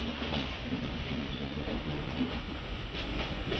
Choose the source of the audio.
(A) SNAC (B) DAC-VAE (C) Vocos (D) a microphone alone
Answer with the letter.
C